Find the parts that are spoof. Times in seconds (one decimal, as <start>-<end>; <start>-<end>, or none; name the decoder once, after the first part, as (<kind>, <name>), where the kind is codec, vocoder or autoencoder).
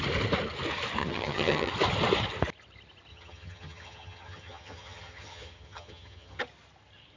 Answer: 1.0-1.7 (vocoder, HiFi-GAN); 3.1-6.4